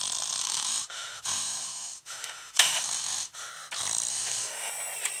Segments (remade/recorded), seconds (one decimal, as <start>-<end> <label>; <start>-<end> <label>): 0.0-0.4 recorded; 0.4-3.5 remade; 3.5-4.1 recorded; 4.1-4.7 remade; 4.7-5.2 recorded